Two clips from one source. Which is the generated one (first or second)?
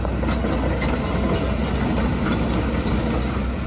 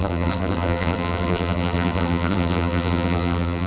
second